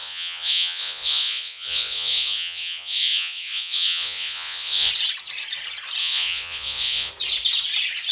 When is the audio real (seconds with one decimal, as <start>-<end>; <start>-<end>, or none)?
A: 4.9-6.0; 7.1-8.1